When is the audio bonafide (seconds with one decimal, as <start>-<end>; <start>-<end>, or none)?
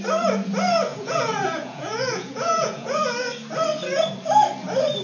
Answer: 0.0-0.9; 3.0-5.0